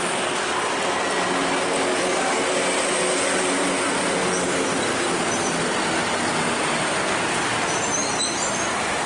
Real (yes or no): yes